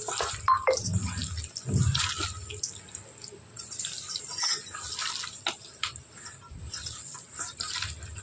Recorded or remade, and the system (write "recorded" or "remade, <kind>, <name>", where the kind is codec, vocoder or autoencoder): recorded